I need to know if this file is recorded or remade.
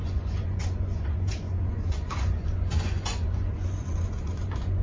remade